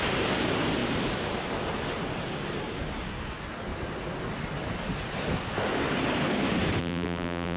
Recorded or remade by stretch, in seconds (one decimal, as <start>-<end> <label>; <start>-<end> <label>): 0.0-6.8 recorded; 6.8-7.6 remade